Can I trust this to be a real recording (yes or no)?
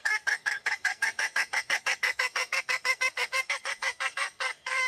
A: no